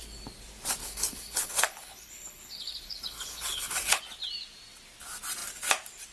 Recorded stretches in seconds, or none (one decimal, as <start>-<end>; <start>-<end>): 0.0-0.8; 4.0-6.1